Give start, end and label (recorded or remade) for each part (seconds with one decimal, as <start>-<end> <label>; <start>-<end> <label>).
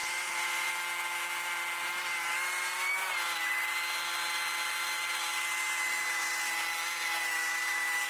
0.0-0.7 remade; 0.7-8.1 recorded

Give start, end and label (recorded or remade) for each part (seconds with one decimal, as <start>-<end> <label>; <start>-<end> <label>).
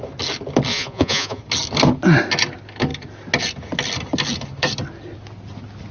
0.0-0.7 recorded; 0.7-1.4 remade; 1.4-5.9 recorded